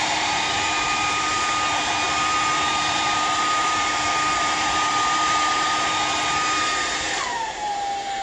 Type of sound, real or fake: fake